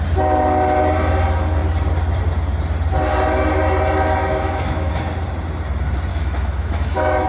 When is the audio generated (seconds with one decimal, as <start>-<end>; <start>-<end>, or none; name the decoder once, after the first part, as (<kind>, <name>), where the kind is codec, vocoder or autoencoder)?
4.2-4.9 (autoencoder, DAC-VAE); 6.1-7.3